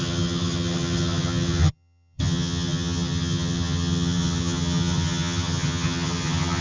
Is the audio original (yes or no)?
no